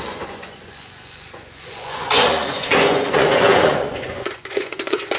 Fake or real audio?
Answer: fake